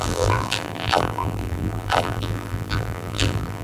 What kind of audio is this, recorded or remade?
remade